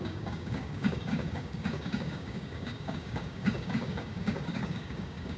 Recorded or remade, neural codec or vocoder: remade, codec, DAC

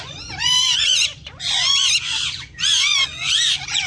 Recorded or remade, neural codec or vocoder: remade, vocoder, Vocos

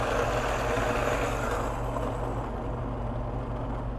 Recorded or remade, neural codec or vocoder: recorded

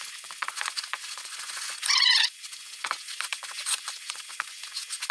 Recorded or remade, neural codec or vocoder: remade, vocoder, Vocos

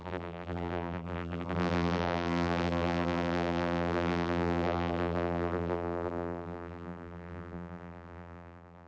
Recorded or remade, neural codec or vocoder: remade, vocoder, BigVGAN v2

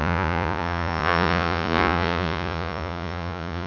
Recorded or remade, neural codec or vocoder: remade, vocoder, Vocos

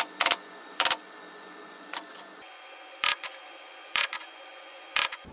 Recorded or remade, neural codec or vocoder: remade, vocoder, Vocos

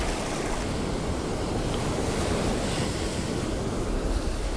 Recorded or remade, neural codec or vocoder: recorded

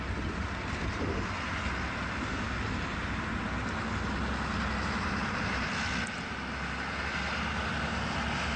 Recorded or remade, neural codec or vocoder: recorded